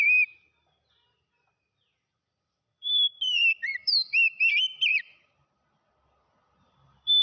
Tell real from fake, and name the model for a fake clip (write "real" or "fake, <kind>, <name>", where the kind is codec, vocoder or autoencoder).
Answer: fake, vocoder, BigVGAN v2